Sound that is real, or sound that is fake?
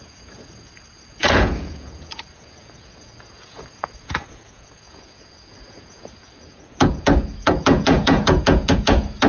fake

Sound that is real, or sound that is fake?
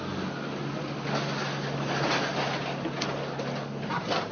real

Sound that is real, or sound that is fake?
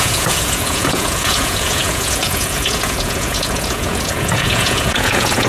fake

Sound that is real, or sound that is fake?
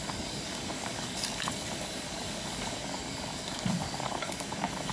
fake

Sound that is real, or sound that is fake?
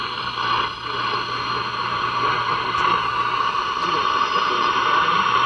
fake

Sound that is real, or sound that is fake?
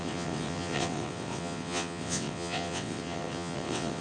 fake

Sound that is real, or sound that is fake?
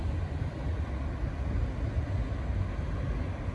real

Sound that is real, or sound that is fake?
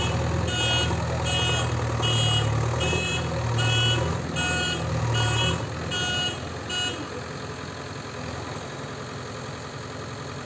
real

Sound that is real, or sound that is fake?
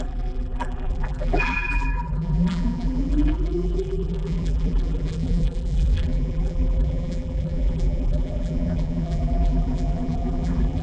fake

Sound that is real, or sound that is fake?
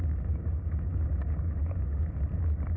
real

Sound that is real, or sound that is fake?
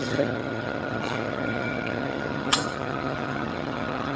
fake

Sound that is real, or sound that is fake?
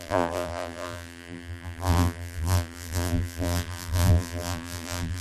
fake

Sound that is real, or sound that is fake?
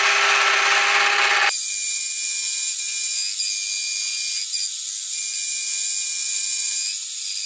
real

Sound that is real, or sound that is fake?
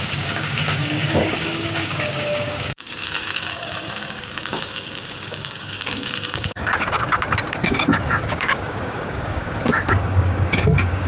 fake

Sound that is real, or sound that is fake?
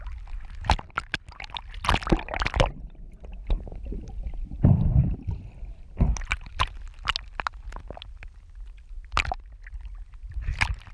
real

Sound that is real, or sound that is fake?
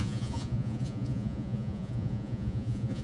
fake